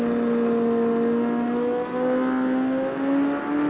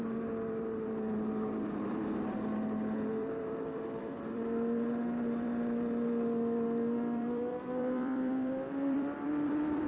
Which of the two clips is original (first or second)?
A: first